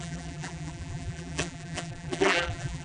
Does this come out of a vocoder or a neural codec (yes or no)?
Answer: yes